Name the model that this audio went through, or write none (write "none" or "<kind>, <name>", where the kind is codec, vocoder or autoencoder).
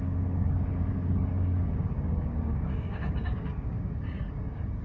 codec, DAC